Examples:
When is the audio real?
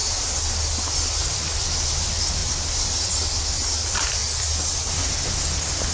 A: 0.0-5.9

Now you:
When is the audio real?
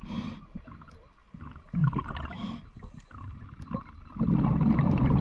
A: 0.0-5.2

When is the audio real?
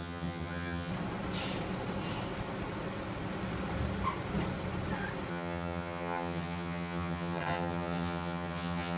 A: 0.9-5.3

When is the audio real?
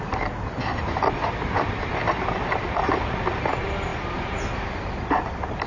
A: 3.9-4.9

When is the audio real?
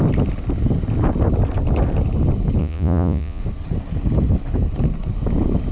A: 0.0-2.6; 3.4-5.7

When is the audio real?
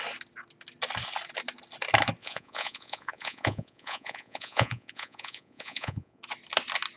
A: 0.0-2.2; 6.2-7.0